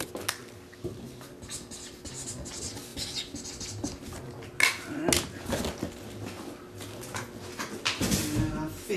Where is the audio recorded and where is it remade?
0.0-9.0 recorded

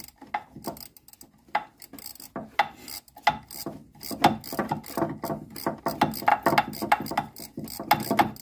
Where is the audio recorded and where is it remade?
0.0-8.4 recorded

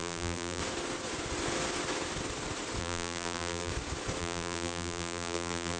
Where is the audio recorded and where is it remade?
0.0-0.6 remade; 0.6-2.8 recorded; 2.8-3.7 remade; 3.7-4.2 recorded; 4.2-5.8 remade

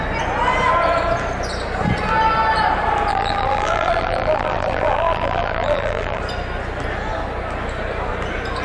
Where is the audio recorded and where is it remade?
0.0-3.1 recorded; 3.1-6.2 remade; 6.2-8.6 recorded

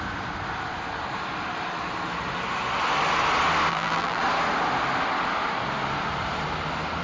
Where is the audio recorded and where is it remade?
0.0-3.7 recorded; 3.7-4.2 remade; 4.2-7.0 recorded